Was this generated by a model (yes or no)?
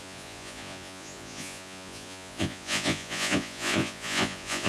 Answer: yes